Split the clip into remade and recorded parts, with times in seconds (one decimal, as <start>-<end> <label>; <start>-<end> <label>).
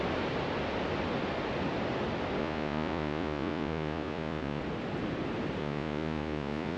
0.0-2.4 recorded; 2.4-4.6 remade; 4.6-5.6 recorded; 5.6-6.8 remade